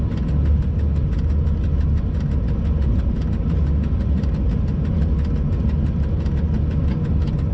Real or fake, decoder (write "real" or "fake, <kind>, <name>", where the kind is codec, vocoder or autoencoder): real